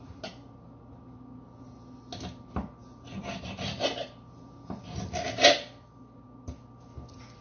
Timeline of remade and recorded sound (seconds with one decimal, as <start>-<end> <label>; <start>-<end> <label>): 0.0-7.4 recorded